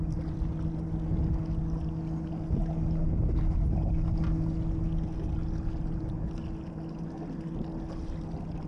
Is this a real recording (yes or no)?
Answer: yes